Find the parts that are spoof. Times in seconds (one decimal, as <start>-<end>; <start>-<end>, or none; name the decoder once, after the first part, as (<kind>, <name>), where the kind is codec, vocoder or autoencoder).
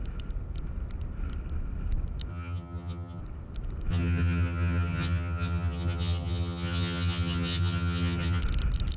2.3-3.2 (vocoder, HiFi-GAN); 3.9-8.4